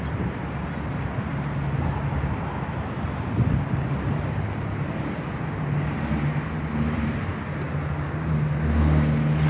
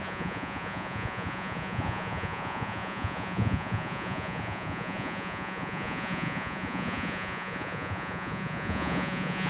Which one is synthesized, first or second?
second